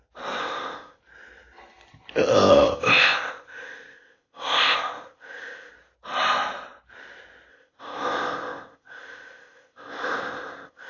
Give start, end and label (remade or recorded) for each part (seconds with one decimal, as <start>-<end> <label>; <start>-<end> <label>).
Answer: 0.0-0.4 recorded; 0.4-1.0 remade; 1.0-2.3 recorded; 2.3-5.7 remade; 5.7-7.5 recorded; 7.5-10.9 remade